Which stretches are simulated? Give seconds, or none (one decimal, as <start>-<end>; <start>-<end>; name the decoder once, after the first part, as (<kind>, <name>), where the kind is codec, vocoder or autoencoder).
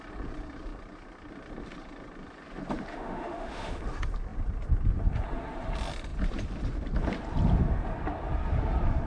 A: 2.9-3.8 (autoencoder, DAC-VAE)